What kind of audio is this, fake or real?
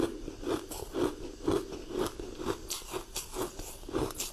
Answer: real